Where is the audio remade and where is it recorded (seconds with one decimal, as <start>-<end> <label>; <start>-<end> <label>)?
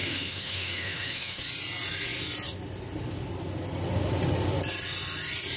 0.0-1.4 remade; 1.4-5.6 recorded